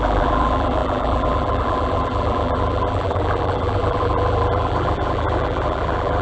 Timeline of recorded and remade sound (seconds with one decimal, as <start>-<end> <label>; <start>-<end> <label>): 0.0-6.2 remade